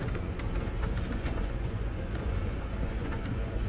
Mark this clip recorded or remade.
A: remade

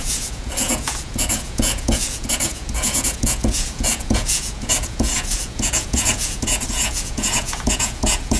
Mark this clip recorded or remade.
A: remade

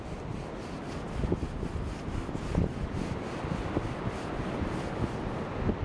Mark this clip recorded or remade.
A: recorded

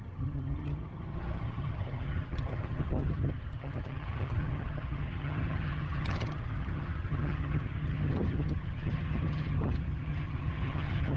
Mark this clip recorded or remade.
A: remade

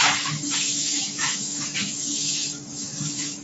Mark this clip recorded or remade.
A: remade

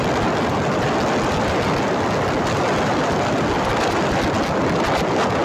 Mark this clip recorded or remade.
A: recorded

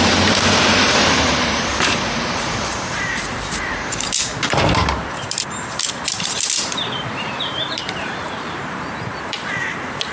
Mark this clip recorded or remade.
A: remade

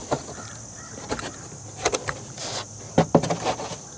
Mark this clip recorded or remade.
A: recorded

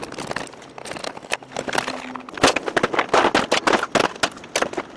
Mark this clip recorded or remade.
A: recorded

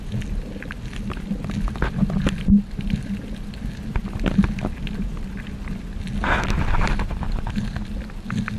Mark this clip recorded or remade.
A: recorded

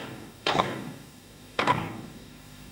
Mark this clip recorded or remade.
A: remade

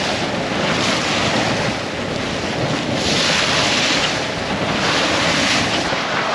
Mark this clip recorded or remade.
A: recorded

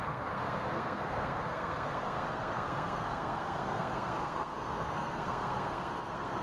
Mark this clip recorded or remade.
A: remade